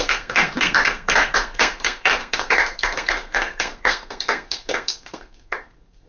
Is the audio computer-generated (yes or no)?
yes